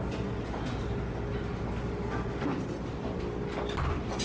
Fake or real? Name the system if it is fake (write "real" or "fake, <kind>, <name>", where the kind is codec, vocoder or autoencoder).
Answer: real